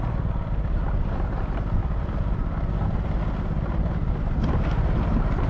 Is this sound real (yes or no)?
yes